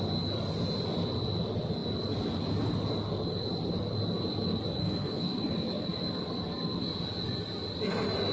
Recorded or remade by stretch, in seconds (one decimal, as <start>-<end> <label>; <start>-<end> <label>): 0.0-4.8 recorded; 4.8-5.4 remade; 5.4-8.3 recorded